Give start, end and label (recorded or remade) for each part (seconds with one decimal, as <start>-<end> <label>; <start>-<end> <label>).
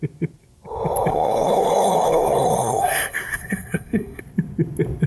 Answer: 0.0-1.1 recorded; 1.1-4.2 remade; 4.2-5.1 recorded